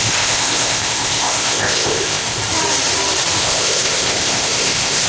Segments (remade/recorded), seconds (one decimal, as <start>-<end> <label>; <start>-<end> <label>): 0.0-2.4 remade; 2.4-3.4 recorded; 3.4-5.1 remade